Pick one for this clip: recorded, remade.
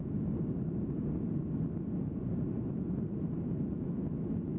recorded